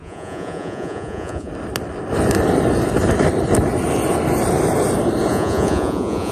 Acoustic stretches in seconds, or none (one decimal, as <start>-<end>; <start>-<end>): 1.5-5.3